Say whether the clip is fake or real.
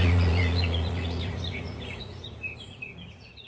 fake